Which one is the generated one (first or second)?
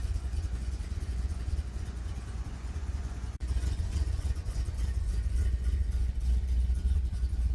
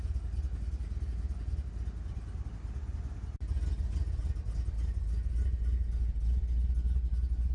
first